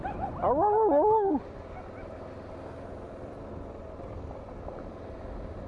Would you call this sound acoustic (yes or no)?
yes